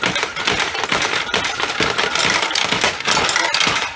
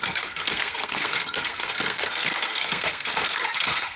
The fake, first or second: second